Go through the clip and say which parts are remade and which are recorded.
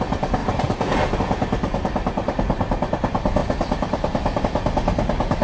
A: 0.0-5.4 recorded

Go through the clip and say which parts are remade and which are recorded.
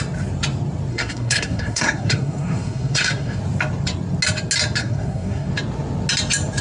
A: 0.0-0.9 recorded; 0.9-3.4 remade; 3.4-4.8 recorded; 4.8-5.5 remade; 5.5-6.6 recorded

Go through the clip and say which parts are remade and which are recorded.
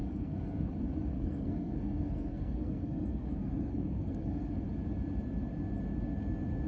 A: 0.0-0.7 remade; 0.7-1.1 recorded; 1.1-4.5 remade; 4.5-6.7 recorded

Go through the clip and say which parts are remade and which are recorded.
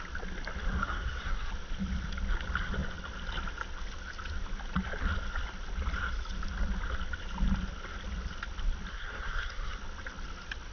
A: 0.0-0.8 recorded; 0.8-1.5 remade; 1.5-8.9 recorded; 8.9-9.8 remade; 9.8-10.7 recorded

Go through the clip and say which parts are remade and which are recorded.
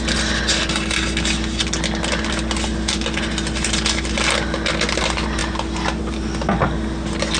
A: 0.0-7.4 recorded